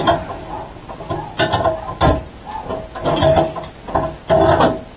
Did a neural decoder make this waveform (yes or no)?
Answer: no